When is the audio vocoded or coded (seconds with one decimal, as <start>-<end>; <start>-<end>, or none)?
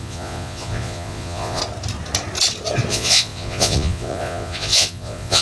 0.0-1.6; 2.9-5.4